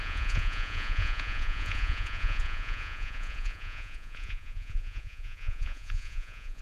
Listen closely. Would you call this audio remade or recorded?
remade